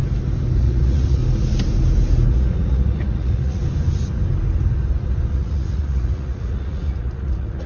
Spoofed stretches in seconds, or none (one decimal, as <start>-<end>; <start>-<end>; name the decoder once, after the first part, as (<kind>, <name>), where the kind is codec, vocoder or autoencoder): 0.6-1.2 (vocoder, Vocos); 2.3-3.6; 5.3-7.7